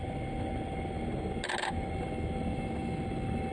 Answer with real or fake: real